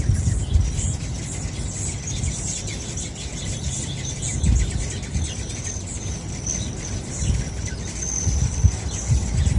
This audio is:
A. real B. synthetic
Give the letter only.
A